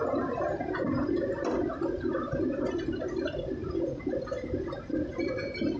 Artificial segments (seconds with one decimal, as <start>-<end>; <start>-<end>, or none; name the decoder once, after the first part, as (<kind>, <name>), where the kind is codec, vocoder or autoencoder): none